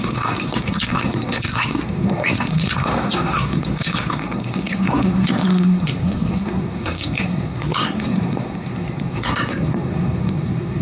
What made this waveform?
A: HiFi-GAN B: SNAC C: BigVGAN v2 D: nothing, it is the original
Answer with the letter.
B